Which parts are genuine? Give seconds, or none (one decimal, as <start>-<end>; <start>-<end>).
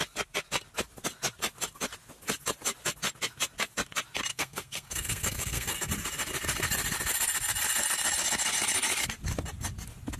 0.0-4.3; 5.9-10.2